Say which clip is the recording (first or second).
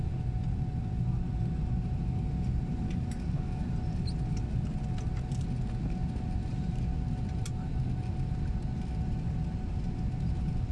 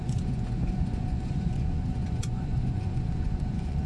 first